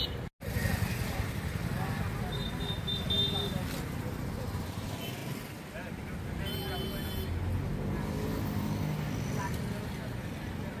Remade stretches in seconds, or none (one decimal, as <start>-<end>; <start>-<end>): none